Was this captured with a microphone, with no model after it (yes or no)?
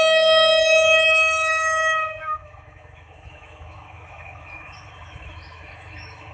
no